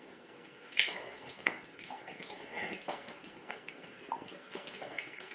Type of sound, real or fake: fake